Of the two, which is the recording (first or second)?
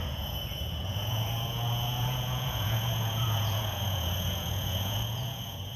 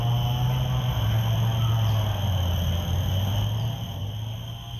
second